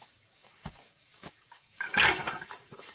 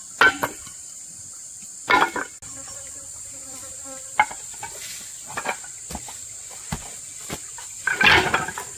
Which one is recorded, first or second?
second